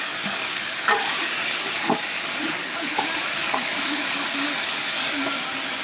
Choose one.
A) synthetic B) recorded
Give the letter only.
A